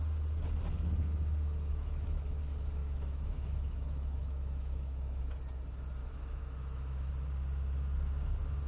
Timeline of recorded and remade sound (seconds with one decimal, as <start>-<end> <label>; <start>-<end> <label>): 0.0-1.7 recorded; 1.7-2.4 remade; 2.4-2.8 recorded; 2.8-5.2 remade; 5.2-6.0 recorded; 6.0-7.1 remade; 7.1-8.7 recorded